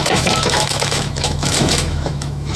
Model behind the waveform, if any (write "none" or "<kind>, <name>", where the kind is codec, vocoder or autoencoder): autoencoder, DAC-VAE